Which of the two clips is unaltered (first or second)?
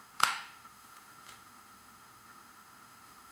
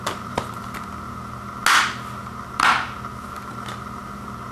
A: second